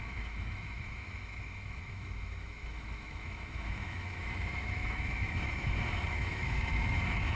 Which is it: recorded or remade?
remade